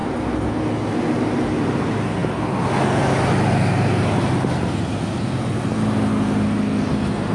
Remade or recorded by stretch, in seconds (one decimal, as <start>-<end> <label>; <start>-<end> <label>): 0.0-7.3 recorded

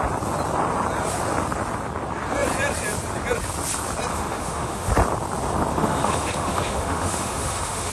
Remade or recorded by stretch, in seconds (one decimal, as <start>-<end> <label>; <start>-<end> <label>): 0.0-4.1 recorded; 4.1-4.9 remade; 4.9-5.7 recorded; 5.7-7.9 remade

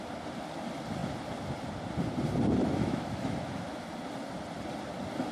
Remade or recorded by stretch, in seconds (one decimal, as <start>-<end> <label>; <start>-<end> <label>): 0.0-2.6 recorded; 2.6-3.9 remade; 3.9-5.3 recorded

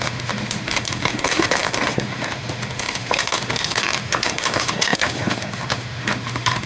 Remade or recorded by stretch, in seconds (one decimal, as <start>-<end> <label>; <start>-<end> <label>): 0.0-6.7 remade